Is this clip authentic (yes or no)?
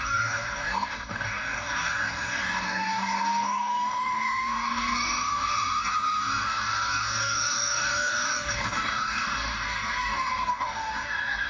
no